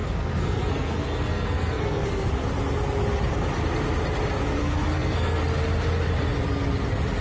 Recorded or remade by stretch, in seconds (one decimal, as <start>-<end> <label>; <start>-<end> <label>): 0.0-2.3 remade; 2.3-4.6 recorded; 4.6-5.4 remade; 5.4-7.2 recorded